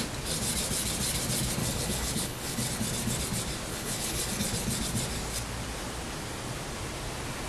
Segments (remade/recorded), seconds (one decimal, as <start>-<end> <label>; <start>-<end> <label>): 0.0-1.6 recorded; 1.6-2.7 remade; 2.7-3.7 recorded; 3.7-4.3 remade; 4.3-7.5 recorded